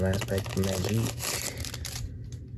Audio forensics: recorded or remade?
recorded